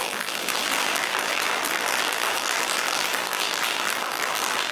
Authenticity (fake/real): fake